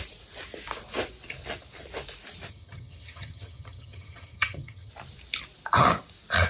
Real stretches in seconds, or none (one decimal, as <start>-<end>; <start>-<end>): 0.0-2.5; 4.9-6.5